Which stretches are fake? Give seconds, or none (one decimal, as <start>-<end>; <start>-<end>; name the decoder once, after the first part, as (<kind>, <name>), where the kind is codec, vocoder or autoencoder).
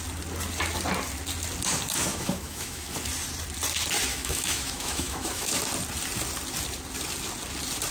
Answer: 2.1-2.9 (autoencoder, DAC-VAE); 4.1-5.6